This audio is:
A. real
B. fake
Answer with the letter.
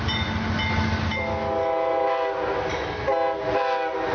A